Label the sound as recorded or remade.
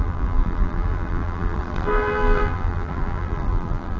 remade